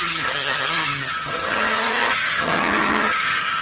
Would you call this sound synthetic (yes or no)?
yes